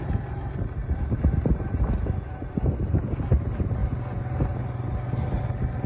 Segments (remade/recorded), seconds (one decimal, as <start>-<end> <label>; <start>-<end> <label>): 0.0-5.9 recorded